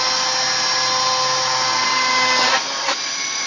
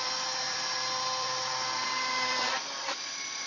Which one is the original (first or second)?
first